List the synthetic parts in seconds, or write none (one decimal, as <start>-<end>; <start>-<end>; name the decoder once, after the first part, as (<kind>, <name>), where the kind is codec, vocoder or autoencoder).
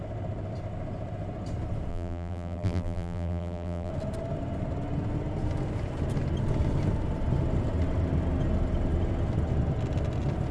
1.9-3.9 (vocoder, BigVGAN v2)